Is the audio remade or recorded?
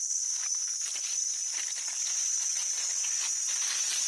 recorded